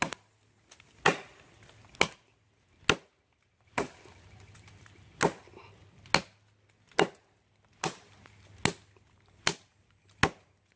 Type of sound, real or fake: real